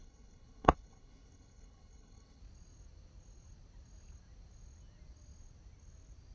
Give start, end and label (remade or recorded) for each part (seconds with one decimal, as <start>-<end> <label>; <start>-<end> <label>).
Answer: 0.0-2.4 remade; 2.4-6.3 recorded